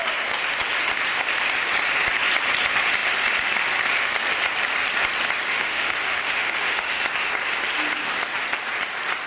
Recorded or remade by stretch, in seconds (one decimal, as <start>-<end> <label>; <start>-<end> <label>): 0.0-5.5 recorded; 5.5-7.0 remade; 7.0-9.3 recorded